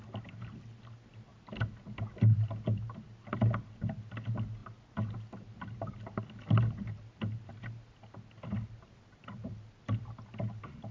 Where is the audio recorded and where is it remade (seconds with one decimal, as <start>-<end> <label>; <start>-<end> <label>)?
0.0-10.9 recorded